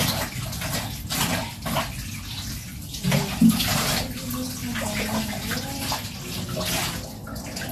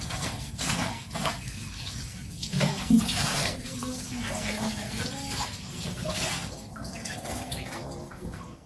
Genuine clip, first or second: first